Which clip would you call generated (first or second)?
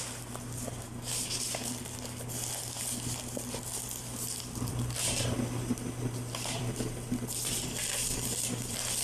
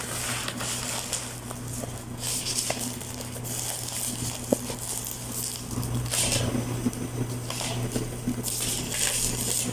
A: first